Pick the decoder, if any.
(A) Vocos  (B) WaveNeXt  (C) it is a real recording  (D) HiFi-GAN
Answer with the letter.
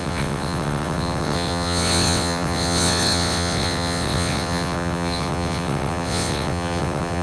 B